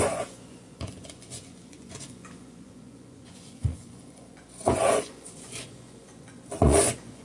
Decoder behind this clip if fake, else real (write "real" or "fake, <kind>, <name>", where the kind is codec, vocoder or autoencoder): fake, vocoder, Vocos